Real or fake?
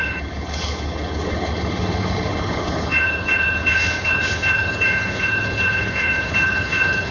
fake